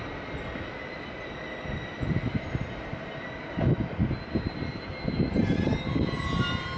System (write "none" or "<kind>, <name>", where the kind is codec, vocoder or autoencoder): none